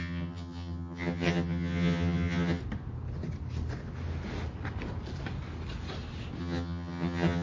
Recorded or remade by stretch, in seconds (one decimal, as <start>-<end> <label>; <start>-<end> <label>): 0.0-2.6 remade; 2.6-6.4 recorded; 6.4-7.4 remade